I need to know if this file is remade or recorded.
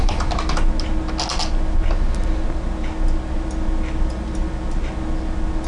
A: recorded